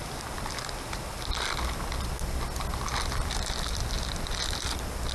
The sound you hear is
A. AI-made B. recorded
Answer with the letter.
B